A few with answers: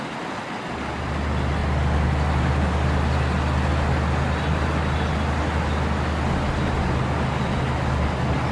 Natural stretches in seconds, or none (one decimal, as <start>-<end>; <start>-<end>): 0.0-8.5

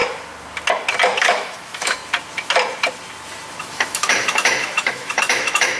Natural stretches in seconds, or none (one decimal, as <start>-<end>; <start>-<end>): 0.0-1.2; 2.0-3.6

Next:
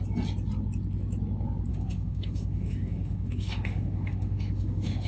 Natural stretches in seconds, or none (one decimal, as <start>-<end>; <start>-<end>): 0.0-1.7

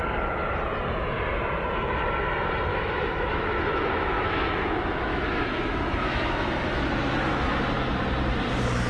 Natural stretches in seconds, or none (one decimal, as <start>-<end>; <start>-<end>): 0.0-2.7; 7.7-8.9

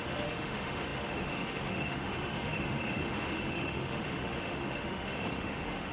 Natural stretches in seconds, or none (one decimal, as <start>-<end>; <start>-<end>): none